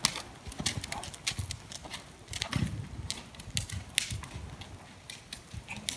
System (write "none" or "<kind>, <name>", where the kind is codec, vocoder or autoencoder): none